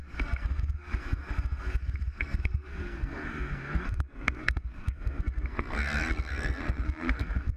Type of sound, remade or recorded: remade